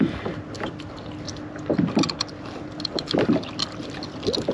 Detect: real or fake real